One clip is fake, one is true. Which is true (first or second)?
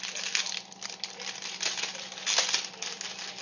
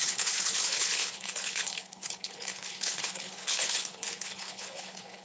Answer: first